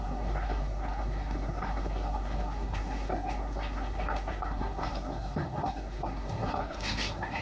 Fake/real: fake